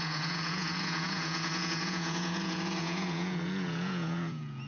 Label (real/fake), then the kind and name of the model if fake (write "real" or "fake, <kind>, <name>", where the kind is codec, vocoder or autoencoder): fake, vocoder, Vocos